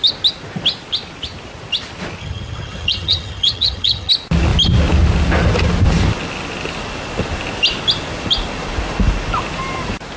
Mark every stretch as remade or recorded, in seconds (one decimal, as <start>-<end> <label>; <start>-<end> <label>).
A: 0.0-2.2 recorded; 2.2-4.1 remade; 4.1-10.2 recorded

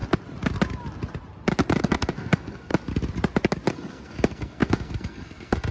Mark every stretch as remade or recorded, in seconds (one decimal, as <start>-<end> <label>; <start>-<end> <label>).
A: 0.0-1.8 recorded; 1.8-2.7 remade; 2.7-3.7 recorded; 3.7-5.7 remade

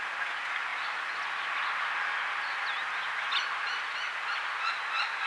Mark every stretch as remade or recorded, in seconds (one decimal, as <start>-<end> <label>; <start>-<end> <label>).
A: 0.0-5.3 recorded

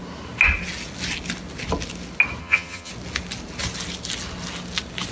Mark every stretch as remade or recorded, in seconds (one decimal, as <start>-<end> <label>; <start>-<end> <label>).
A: 0.0-2.4 recorded; 2.4-2.9 remade; 2.9-5.1 recorded